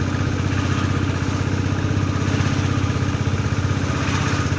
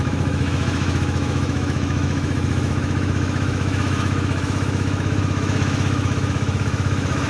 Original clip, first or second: first